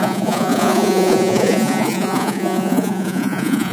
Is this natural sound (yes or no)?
no